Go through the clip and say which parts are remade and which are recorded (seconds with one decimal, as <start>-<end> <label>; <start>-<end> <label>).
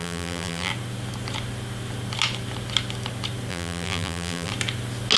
0.0-0.7 remade; 0.7-3.5 recorded; 3.5-4.5 remade; 4.5-5.2 recorded